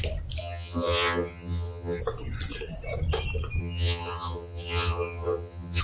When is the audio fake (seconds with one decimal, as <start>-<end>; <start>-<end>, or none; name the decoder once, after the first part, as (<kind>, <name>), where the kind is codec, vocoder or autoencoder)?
0.4-2.0 (vocoder, HiFi-GAN); 3.6-5.8